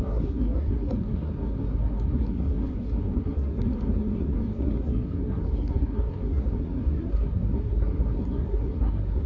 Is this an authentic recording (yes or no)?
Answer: no